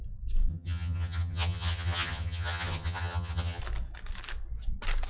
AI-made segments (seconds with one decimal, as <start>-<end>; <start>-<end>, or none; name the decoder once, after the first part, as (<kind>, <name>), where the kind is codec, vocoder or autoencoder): 0.5-3.6 (vocoder, HiFi-GAN)